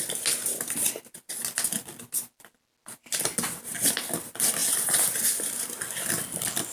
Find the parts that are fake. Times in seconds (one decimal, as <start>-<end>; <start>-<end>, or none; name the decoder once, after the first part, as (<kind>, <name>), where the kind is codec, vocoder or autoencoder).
none